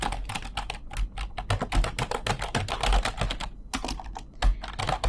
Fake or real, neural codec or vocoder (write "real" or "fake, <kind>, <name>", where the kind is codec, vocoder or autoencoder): real